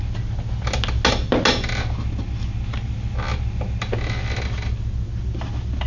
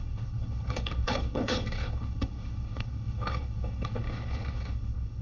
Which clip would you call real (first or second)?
first